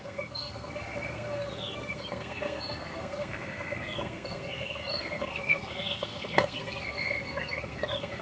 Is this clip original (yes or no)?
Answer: no